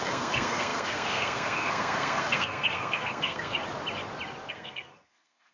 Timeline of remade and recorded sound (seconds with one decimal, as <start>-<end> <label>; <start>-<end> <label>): 0.0-3.6 remade; 3.6-4.5 recorded; 4.5-5.5 remade